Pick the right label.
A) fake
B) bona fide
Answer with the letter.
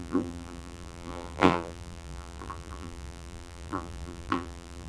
A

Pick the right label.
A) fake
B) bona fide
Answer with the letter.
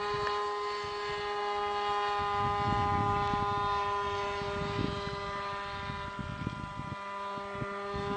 B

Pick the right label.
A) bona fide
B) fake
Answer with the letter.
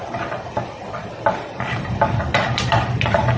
B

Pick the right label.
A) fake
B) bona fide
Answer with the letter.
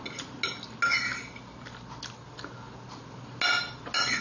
B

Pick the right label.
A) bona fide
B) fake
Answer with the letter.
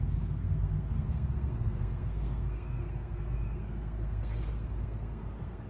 B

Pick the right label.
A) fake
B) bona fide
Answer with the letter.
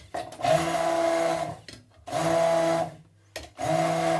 B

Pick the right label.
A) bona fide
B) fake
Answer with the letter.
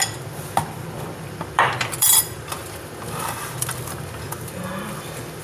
B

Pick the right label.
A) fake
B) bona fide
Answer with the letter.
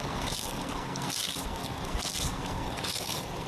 A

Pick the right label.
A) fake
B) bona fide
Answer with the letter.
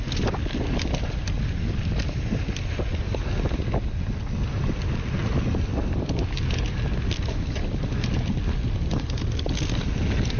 B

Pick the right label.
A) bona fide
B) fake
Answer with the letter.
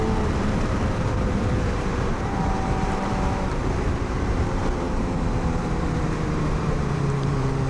B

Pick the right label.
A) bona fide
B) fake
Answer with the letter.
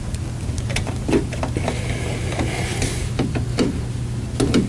A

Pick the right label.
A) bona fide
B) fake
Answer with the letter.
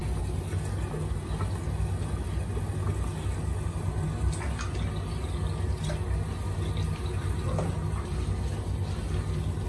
A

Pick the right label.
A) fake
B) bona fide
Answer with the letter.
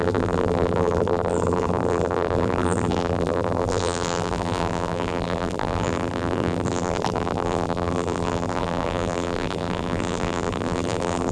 A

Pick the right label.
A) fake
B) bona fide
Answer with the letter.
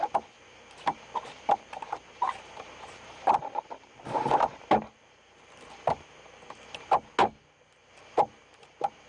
B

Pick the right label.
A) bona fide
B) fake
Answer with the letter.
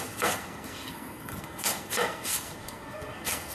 B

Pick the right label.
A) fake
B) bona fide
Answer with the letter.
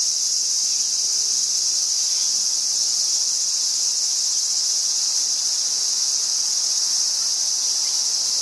B